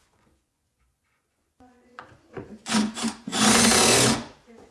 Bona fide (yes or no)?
no